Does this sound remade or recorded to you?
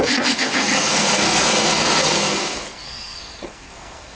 remade